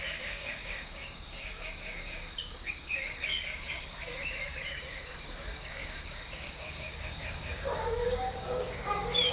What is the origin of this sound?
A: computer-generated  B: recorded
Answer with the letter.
A